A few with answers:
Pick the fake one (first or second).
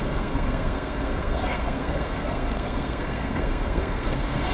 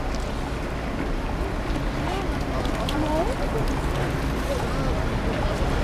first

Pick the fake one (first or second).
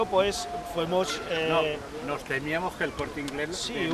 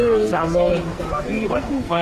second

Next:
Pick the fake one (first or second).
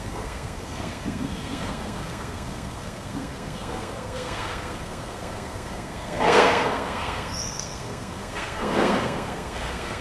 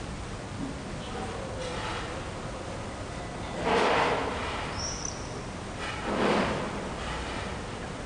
first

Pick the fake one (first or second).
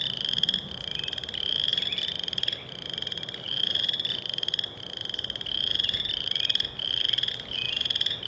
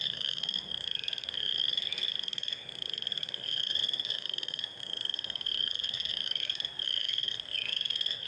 second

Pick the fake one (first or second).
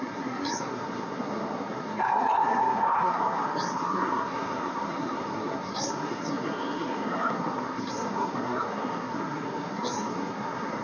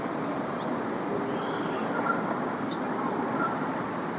first